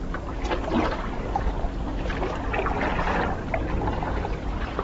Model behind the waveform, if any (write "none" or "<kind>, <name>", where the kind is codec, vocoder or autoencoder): none